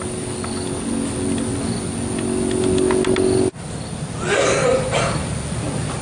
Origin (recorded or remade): recorded